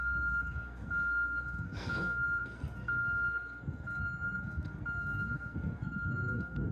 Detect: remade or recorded remade